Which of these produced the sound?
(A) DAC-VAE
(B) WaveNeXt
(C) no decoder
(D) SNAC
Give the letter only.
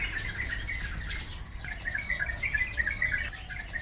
C